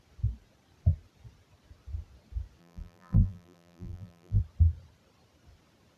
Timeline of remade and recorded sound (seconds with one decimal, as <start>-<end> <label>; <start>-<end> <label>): 0.0-2.6 recorded; 2.6-4.4 remade; 4.4-6.0 recorded